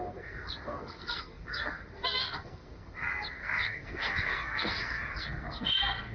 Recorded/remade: remade